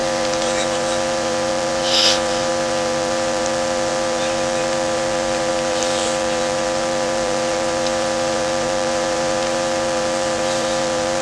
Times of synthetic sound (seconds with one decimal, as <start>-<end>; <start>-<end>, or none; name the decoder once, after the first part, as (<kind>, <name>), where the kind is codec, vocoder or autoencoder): 0.0-11.2 (vocoder, BigVGAN v2)